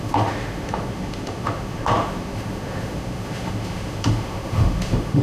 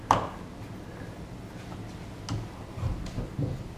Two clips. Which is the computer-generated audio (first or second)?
first